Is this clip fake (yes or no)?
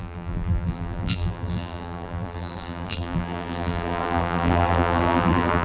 yes